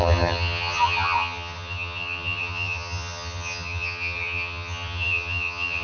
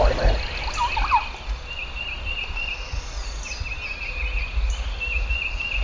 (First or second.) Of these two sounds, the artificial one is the first